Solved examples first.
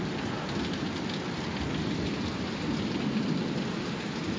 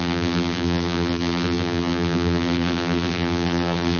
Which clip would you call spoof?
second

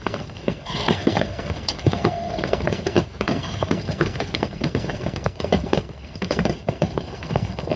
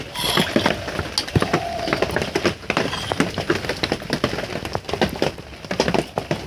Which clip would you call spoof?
first